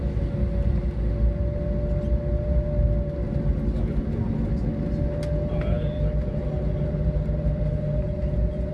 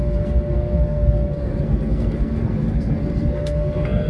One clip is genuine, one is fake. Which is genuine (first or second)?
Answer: first